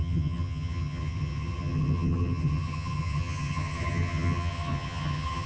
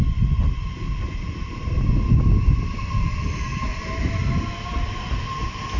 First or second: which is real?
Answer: second